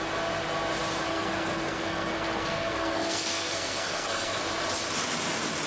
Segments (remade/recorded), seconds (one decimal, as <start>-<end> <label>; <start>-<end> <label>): 0.0-1.1 recorded; 1.1-4.4 remade; 4.4-5.7 recorded